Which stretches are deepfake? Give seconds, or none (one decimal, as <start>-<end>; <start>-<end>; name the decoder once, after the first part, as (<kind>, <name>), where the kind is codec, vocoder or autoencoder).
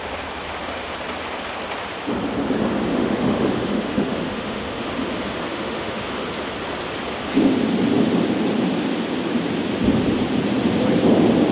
2.9-4.9 (autoencoder, DAC-VAE); 5.5-6.1